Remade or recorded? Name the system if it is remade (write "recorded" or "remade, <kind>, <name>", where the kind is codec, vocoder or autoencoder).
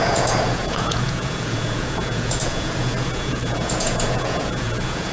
remade, vocoder, Vocos